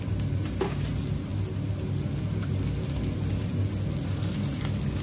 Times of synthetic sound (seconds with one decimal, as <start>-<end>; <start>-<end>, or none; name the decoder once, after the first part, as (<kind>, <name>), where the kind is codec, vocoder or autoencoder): none